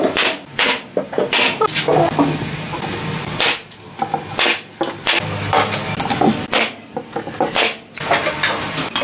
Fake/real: real